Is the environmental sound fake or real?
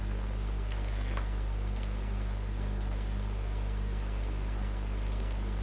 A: fake